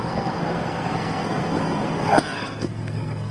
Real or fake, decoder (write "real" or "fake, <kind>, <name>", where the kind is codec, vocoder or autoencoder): fake, codec, SNAC